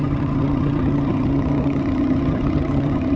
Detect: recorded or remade remade